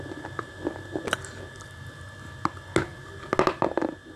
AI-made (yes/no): no